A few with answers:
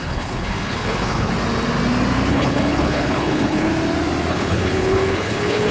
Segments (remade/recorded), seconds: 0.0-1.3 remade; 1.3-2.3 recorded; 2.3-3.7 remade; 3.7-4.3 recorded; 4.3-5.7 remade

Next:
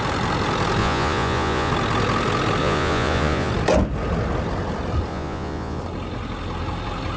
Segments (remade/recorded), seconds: 0.0-0.8 recorded; 0.8-1.7 remade; 1.7-2.6 recorded; 2.6-3.5 remade; 3.5-5.1 recorded; 5.1-5.8 remade; 5.8-7.2 recorded

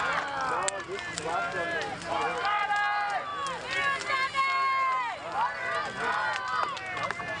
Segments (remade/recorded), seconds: 0.0-7.4 recorded

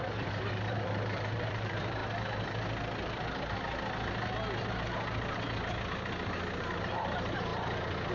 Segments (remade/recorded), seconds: 0.0-2.0 remade; 2.0-6.6 recorded; 6.6-7.5 remade; 7.5-8.1 recorded

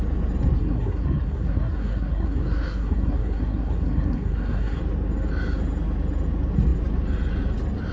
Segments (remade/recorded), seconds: 0.0-0.6 recorded; 0.6-4.8 remade; 4.8-7.9 recorded